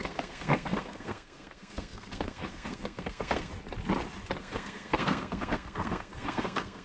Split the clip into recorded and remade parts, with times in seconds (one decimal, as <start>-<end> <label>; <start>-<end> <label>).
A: 0.0-3.5 remade; 3.5-4.4 recorded; 4.4-6.8 remade